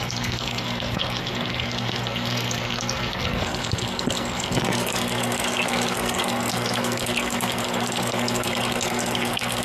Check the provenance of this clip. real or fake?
fake